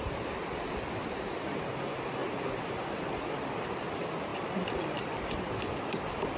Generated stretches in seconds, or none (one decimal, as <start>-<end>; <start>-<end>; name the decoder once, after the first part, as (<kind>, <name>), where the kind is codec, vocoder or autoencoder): 0.0-2.2 (vocoder, BigVGAN v2); 3.5-6.4